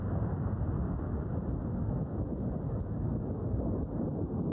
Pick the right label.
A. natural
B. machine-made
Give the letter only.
A